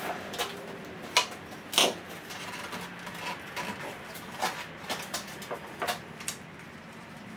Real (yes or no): yes